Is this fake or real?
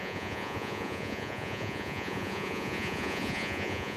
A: fake